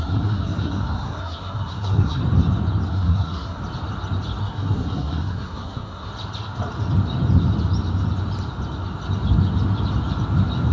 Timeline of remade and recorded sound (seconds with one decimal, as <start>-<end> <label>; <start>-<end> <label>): 0.0-2.2 remade; 2.2-2.9 recorded; 2.9-3.6 remade; 3.6-4.4 recorded; 4.4-6.1 remade; 6.1-10.7 recorded